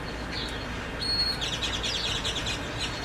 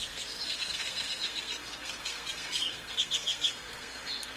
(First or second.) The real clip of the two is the first